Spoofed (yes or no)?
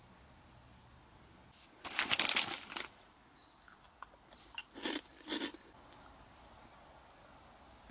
no